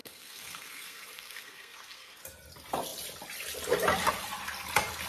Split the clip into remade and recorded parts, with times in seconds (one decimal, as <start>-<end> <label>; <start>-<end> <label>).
0.0-2.2 remade; 2.2-5.1 recorded